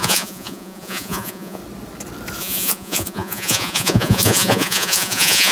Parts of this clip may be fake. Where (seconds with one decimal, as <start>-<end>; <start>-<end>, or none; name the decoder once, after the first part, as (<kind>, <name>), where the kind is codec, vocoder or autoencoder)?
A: 0.0-1.6 (vocoder, Vocos); 2.4-5.5